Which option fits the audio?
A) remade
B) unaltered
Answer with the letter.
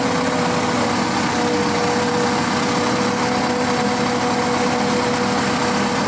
A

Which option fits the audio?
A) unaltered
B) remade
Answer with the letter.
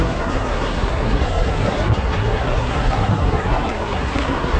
B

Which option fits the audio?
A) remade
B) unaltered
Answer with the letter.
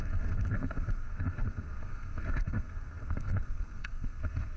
A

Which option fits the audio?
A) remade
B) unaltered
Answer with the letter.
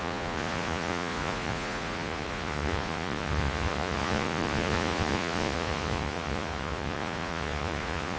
A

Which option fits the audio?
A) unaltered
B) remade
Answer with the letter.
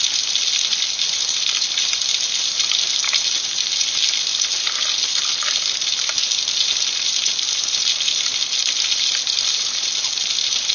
A